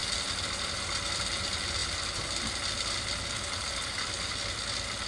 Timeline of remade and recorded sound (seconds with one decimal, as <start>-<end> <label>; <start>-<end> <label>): 0.0-5.1 recorded

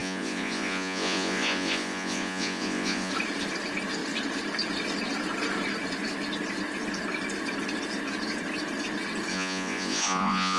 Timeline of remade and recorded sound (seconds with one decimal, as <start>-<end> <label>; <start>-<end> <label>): 0.0-3.1 remade; 3.1-9.3 recorded; 9.3-10.6 remade

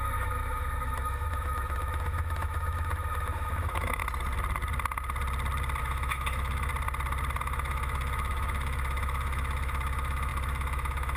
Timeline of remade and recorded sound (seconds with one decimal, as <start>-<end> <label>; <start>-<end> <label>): 0.0-4.0 remade; 4.0-5.8 recorded; 5.8-6.7 remade; 6.7-7.4 recorded; 7.4-11.2 remade